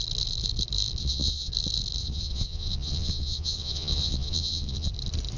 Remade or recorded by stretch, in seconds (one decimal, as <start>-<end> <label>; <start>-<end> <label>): 0.0-1.0 recorded; 1.0-1.5 remade; 1.5-2.0 recorded; 2.0-4.9 remade; 4.9-5.4 recorded